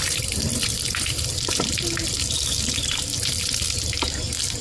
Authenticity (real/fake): real